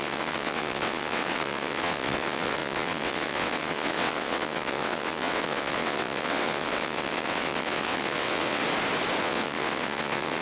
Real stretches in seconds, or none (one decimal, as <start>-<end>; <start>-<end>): 8.6-9.2